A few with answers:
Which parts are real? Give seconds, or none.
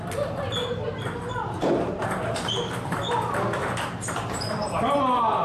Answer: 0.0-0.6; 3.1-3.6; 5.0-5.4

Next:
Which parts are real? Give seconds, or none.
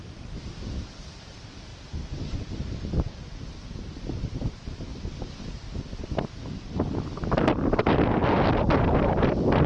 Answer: 4.9-9.7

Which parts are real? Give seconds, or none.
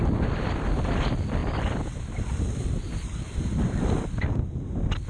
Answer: 0.0-5.1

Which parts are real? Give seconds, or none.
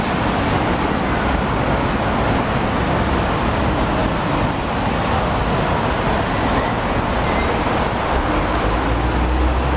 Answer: 0.0-9.8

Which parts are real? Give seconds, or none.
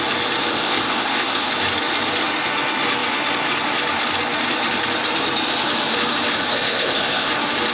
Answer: 0.0-0.5; 1.5-6.4; 7.3-7.7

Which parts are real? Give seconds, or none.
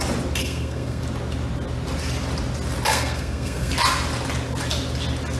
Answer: 0.0-0.4; 1.0-2.9; 3.7-5.4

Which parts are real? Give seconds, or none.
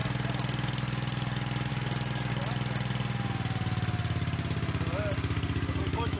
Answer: 0.0-1.7; 2.3-5.8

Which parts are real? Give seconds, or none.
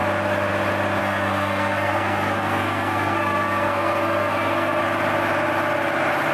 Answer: 0.0-1.0; 4.8-6.3